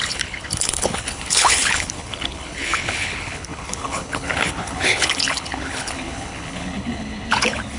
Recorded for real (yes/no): no